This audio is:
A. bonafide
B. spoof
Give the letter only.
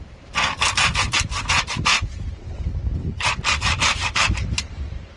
B